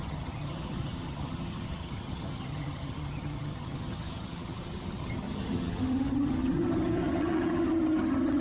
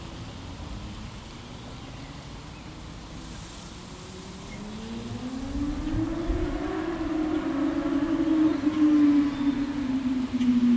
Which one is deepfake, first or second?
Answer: first